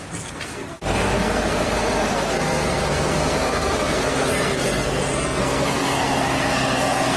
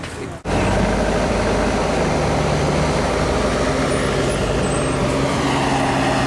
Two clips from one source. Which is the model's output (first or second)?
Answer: first